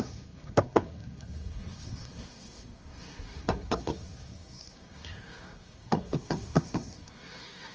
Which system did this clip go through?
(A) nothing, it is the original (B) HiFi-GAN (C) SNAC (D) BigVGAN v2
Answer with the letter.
C